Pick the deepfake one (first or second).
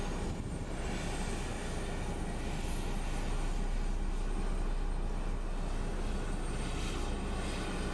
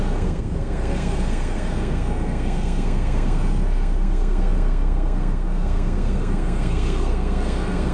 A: second